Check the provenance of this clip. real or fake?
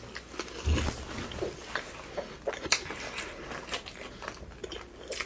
real